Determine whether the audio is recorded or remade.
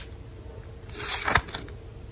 recorded